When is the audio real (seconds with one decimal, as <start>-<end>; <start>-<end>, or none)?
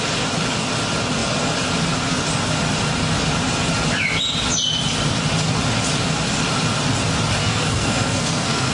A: 0.0-7.4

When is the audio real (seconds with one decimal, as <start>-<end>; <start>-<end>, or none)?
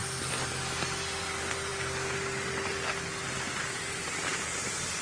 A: 0.0-5.0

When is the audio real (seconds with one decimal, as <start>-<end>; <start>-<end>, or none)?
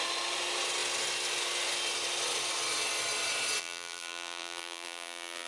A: 0.0-3.6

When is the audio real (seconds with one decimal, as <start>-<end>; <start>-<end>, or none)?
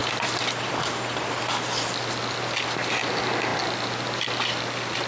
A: 0.0-5.1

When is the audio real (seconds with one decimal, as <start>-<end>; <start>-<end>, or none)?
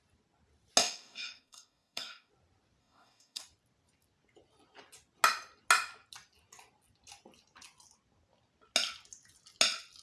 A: 0.0-0.8; 2.3-2.8; 3.4-10.0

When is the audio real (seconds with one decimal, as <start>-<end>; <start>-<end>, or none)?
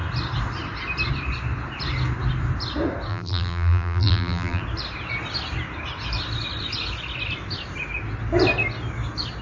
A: 0.0-3.1; 4.6-9.4